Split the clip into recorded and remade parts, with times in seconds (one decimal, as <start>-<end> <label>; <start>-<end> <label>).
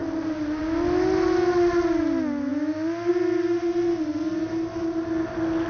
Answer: 0.0-5.7 recorded